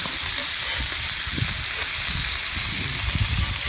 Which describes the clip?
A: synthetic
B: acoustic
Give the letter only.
B